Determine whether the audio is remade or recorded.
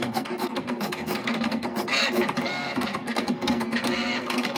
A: remade